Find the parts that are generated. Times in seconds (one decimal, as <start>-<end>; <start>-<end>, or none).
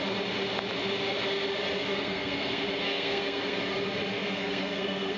1.9-3.6; 4.1-5.2